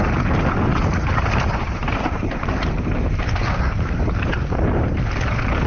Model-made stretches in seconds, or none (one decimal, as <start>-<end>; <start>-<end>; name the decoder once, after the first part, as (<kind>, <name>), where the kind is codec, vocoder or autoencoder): 0.7-3.3 (vocoder, BigVGAN v2); 4.4-5.1